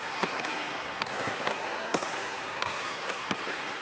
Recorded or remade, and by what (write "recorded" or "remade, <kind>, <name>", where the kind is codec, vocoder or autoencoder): remade, codec, SNAC